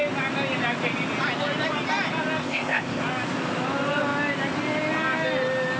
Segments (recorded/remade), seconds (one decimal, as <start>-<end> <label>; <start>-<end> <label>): 0.0-2.4 recorded; 2.4-3.0 remade; 3.0-5.8 recorded